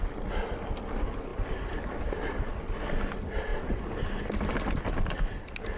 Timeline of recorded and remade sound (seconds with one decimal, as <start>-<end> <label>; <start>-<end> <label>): 0.0-5.8 recorded